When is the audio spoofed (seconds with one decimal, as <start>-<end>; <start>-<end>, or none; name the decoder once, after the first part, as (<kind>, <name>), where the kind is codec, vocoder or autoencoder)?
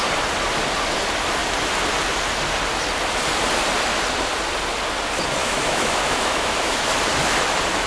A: 5.4-6.8 (autoencoder, DAC-VAE)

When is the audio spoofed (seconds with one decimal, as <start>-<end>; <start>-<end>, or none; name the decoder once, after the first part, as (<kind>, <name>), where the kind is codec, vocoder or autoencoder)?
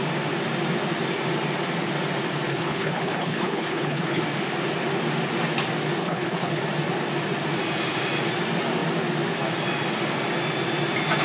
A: 2.5-4.2 (codec, HILCodec); 6.0-6.6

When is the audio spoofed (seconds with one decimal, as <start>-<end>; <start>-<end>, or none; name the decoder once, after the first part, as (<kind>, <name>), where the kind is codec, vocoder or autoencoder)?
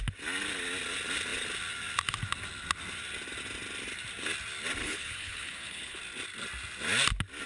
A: 4.8-6.0 (codec, HILCodec)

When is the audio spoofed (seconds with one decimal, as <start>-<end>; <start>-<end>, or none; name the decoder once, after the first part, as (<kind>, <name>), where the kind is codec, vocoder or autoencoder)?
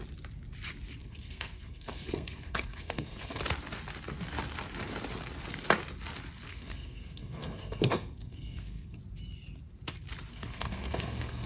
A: 1.0-3.4 (codec, SNAC); 6.5-9.0; 10.3-11.5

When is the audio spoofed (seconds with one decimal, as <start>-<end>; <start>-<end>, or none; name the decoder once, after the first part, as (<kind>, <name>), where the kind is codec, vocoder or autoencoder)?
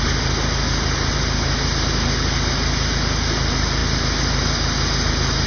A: none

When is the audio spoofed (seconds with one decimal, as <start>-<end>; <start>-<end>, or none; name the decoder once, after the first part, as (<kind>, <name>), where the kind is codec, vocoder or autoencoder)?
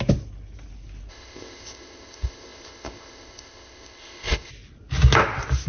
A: 1.1-4.5 (codec, ZipCodec)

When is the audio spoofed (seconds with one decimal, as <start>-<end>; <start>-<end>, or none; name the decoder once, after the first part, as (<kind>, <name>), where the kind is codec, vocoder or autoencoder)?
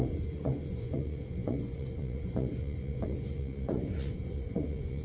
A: 0.0-5.0 (vocoder, Vocos)